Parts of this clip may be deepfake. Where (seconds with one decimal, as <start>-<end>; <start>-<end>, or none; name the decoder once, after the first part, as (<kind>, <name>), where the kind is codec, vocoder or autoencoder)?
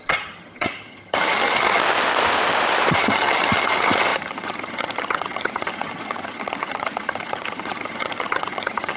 0.0-1.8 (vocoder, HiFi-GAN); 2.9-9.0